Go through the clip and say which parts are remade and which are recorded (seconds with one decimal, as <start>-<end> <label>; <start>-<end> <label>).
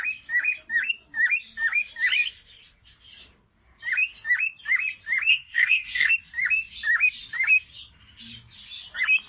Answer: 0.0-5.3 recorded; 5.3-6.1 remade; 6.1-9.3 recorded